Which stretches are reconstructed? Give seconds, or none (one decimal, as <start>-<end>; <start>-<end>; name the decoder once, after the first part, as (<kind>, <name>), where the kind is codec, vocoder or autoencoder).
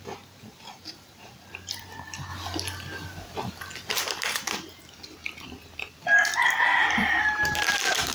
0.0-2.3 (vocoder, BigVGAN v2); 3.9-5.2; 6.4-8.1